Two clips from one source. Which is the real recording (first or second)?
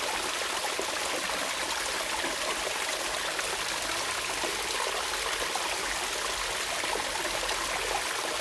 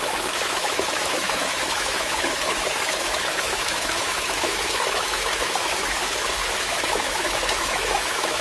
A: first